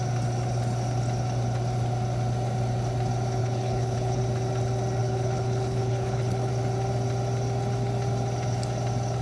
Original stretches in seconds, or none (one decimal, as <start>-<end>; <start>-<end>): 0.0-3.4; 4.2-5.0; 6.5-9.2

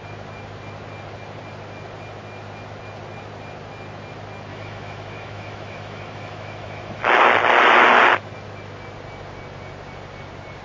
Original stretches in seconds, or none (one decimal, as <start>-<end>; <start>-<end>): 0.0-4.5; 7.2-10.6

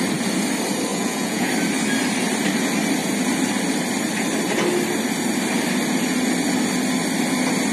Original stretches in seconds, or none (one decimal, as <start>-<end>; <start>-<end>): 0.0-0.9; 1.5-7.7

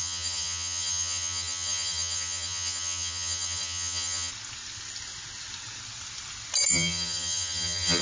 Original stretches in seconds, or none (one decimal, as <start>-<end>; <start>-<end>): 4.3-6.7

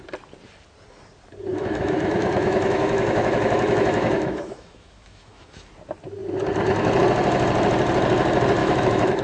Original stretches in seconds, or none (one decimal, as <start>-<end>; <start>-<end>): 0.0-1.5; 5.7-8.6

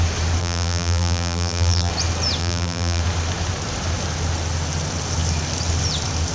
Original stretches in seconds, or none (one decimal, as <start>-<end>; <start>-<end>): 0.0-0.4; 1.9-2.4; 3.0-6.3

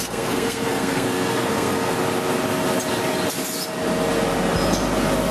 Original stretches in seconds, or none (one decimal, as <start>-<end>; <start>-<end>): 1.9-5.3

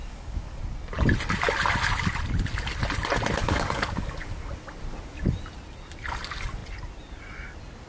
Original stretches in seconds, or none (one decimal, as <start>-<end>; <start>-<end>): 0.6-3.4; 4.5-7.9